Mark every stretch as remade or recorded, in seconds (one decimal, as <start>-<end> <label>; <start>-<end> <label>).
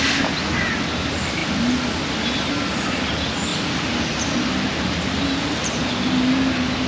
0.0-6.9 recorded